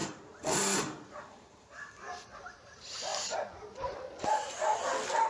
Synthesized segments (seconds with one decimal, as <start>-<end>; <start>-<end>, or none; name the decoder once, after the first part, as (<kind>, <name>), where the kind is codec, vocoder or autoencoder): 0.0-1.9 (vocoder, BigVGAN v2); 3.1-4.0